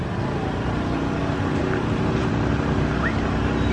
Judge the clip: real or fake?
real